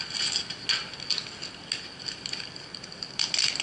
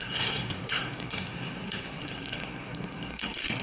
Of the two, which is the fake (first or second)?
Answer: second